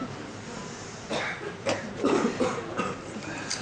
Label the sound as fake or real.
fake